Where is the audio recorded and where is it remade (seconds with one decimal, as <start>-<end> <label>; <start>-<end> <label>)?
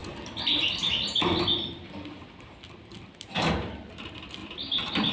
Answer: 0.0-5.1 recorded